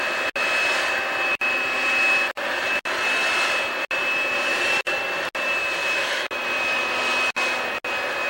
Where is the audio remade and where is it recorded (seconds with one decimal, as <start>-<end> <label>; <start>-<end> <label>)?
0.0-5.8 recorded; 5.8-6.3 remade; 6.3-8.3 recorded